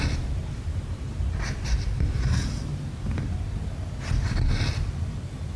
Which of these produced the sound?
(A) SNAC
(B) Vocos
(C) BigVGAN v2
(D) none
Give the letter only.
D